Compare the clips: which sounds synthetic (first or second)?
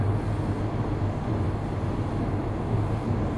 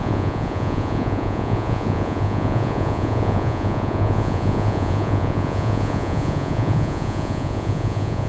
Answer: second